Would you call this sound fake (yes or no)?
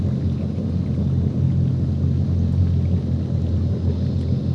no